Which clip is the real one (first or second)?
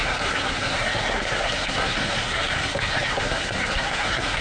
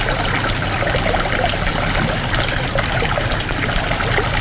second